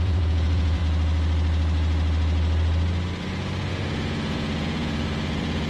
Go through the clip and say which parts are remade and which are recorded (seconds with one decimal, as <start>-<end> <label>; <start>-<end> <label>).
0.0-0.8 remade; 0.8-3.7 recorded; 3.7-5.7 remade